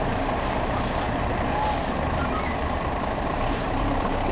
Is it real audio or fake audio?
fake